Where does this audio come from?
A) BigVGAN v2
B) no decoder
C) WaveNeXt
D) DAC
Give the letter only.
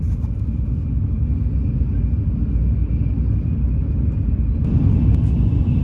B